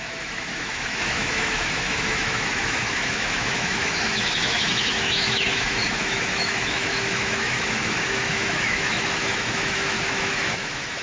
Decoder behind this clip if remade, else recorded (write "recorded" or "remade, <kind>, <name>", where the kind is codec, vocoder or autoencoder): remade, autoencoder, DAC-VAE